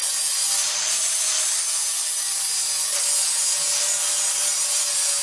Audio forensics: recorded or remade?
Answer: recorded